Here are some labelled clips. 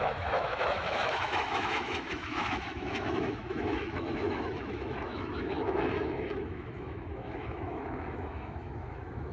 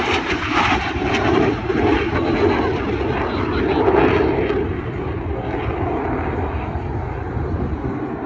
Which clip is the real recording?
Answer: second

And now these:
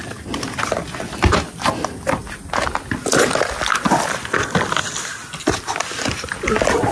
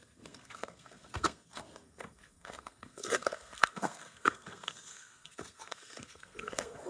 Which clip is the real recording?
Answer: first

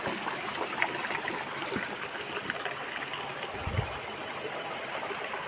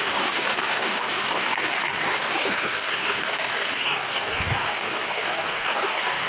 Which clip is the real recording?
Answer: first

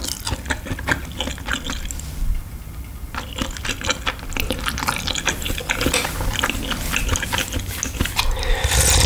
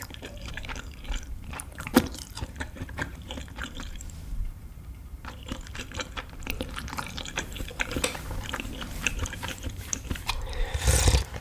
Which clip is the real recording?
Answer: first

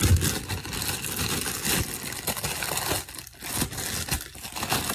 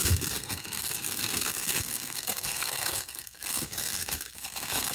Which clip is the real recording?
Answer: first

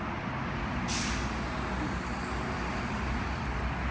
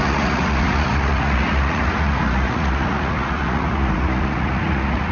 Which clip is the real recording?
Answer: first